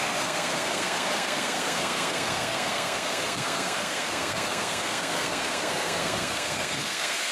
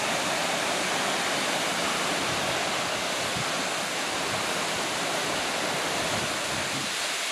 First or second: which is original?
second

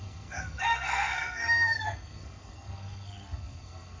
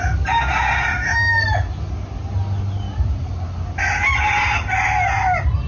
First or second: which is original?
second